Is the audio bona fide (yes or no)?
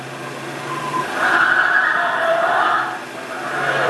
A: yes